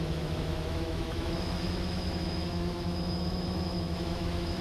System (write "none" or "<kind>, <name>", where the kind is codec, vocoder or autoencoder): autoencoder, DAC-VAE